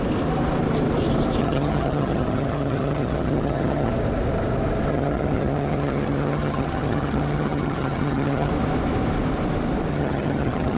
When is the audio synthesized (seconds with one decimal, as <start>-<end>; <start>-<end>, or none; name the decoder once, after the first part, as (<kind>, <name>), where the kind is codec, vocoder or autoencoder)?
1.4-3.9 (vocoder, HiFi-GAN); 4.9-8.5; 9.9-10.8